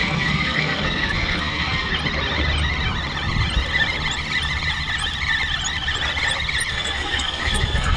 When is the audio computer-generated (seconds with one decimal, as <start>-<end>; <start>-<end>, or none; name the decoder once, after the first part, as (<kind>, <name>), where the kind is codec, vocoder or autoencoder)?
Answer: 0.0-1.9 (codec, SNAC); 6.7-8.0